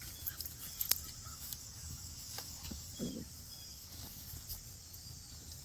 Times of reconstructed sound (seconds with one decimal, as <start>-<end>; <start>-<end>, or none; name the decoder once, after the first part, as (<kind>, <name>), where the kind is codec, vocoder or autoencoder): 1.3-2.9 (codec, DAC); 3.7-4.2